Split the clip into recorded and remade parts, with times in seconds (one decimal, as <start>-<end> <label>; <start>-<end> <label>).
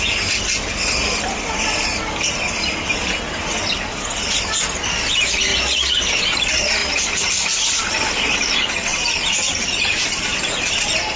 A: 0.0-5.5 recorded; 5.5-6.2 remade; 6.2-8.9 recorded; 8.9-10.7 remade; 10.7-11.2 recorded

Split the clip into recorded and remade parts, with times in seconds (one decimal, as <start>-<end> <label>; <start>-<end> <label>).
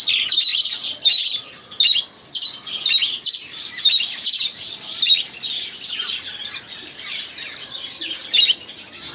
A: 0.0-0.5 recorded; 0.5-1.7 remade; 1.7-3.0 recorded; 3.0-7.3 remade; 7.3-9.1 recorded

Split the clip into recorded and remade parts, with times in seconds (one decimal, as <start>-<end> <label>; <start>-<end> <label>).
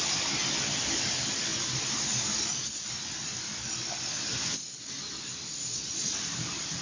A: 0.0-6.8 recorded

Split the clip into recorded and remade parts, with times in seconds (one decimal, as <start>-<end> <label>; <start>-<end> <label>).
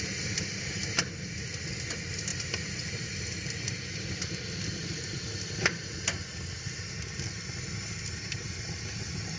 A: 0.0-9.4 recorded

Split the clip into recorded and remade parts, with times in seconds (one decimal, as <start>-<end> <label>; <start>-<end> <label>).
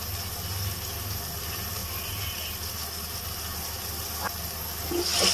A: 0.0-5.3 recorded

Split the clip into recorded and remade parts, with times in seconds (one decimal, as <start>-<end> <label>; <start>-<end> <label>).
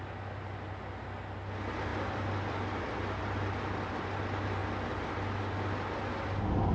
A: 0.0-1.9 recorded; 1.9-4.0 remade; 4.0-4.6 recorded; 4.6-5.4 remade; 5.4-6.7 recorded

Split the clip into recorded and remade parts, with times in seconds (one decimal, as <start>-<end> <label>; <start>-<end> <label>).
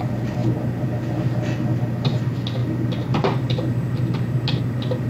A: 0.0-5.1 recorded